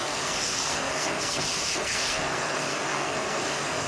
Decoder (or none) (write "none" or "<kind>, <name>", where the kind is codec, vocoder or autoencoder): codec, SNAC